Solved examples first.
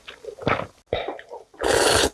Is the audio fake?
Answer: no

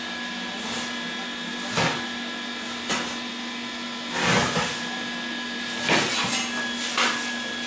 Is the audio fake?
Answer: no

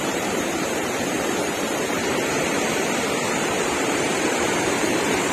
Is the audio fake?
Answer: yes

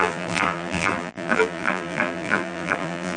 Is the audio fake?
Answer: yes